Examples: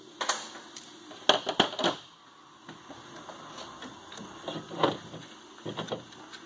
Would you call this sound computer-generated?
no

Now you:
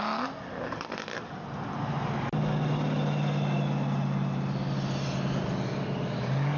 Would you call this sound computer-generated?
no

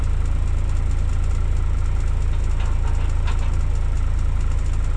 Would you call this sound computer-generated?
no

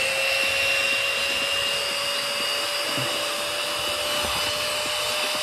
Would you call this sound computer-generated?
no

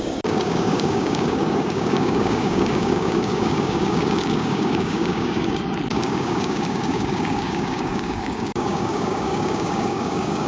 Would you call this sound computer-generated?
yes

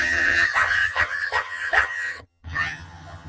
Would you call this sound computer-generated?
yes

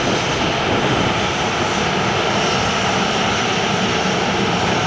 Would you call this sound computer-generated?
no